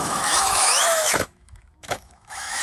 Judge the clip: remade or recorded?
remade